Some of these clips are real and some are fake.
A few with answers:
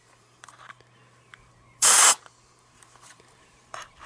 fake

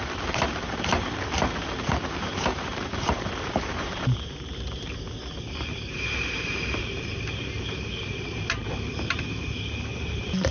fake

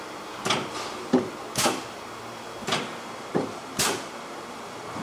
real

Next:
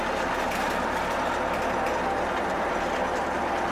real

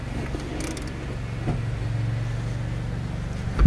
real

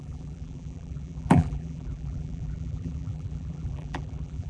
fake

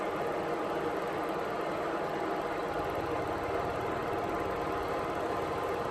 real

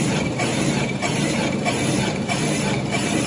fake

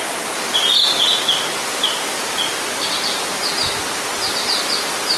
real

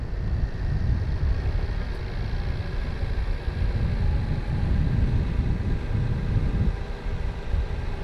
real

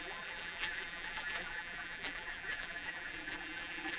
fake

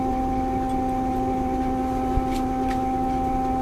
real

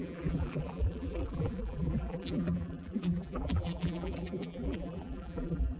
fake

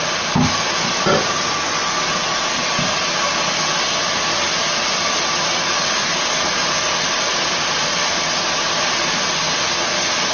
real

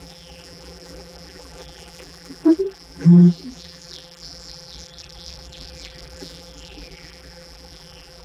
fake